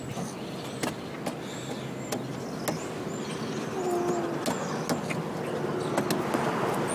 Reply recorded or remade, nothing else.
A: recorded